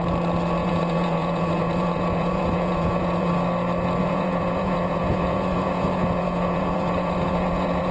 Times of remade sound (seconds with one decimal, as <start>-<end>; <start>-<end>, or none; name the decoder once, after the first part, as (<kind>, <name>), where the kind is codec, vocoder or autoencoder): 0.6-3.3 (vocoder, Vocos); 4.0-7.9